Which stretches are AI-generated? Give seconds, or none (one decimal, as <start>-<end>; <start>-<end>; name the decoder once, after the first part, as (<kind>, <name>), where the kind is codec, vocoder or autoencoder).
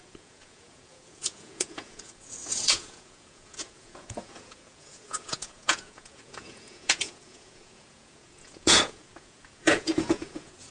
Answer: 0.0-10.7 (vocoder, Vocos)